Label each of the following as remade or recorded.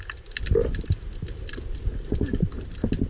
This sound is recorded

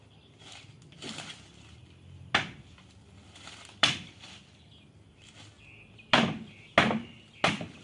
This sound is recorded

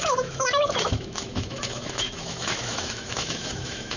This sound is remade